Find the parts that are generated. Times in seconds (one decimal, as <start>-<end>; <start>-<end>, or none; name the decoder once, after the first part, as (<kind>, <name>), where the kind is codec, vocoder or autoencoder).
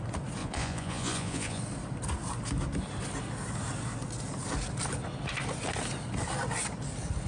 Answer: 0.4-1.6 (vocoder, Vocos)